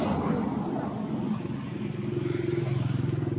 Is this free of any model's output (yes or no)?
yes